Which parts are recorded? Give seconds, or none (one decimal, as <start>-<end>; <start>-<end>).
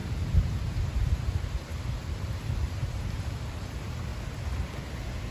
4.1-5.3